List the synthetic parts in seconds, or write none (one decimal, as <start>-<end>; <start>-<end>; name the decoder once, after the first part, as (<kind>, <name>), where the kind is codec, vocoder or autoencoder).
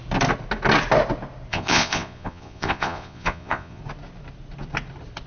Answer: 1.5-3.8 (vocoder, Vocos)